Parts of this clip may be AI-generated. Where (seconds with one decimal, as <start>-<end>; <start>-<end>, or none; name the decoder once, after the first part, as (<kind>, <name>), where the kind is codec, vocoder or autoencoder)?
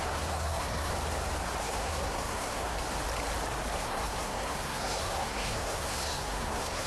0.0-0.9 (codec, SNAC); 1.6-2.7; 3.8-6.9